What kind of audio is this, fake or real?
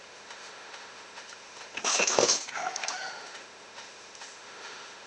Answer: fake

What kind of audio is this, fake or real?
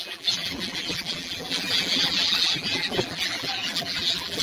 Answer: fake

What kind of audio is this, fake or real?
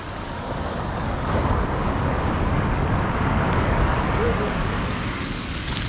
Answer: fake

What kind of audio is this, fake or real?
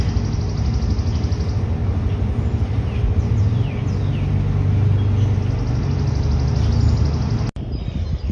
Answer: real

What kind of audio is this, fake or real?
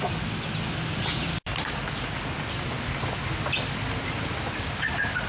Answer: real